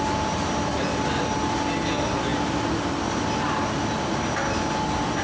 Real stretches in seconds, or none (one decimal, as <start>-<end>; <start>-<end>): 0.0-5.2